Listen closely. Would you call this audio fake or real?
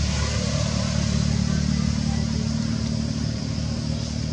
real